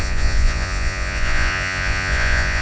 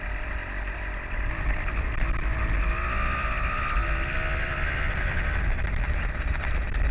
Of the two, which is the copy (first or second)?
first